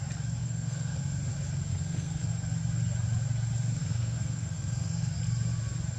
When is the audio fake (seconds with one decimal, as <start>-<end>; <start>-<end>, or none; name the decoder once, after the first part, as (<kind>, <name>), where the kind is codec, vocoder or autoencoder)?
0.4-1.0 (codec, SNAC); 1.7-2.3; 3.8-5.1